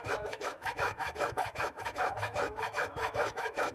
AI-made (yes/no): yes